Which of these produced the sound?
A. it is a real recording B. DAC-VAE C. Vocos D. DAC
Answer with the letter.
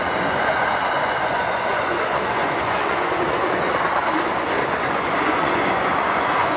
C